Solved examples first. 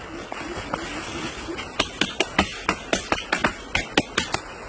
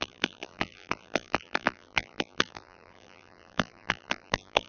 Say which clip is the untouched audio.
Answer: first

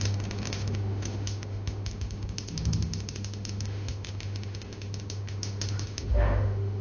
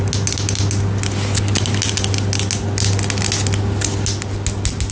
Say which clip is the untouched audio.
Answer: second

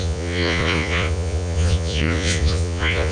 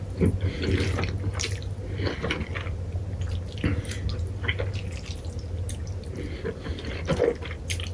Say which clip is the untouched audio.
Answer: second